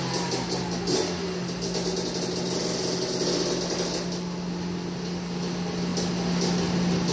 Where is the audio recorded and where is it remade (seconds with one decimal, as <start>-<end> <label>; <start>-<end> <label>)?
0.0-7.1 recorded